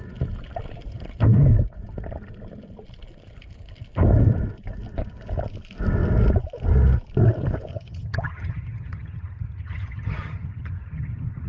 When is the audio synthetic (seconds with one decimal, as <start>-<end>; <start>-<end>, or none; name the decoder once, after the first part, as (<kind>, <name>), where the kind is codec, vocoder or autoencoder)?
7.7-11.5 (vocoder, HiFi-GAN)